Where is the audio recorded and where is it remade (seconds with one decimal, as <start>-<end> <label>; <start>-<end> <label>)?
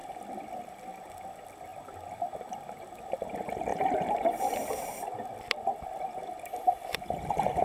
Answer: 0.0-0.7 remade; 0.7-3.7 recorded; 3.7-7.6 remade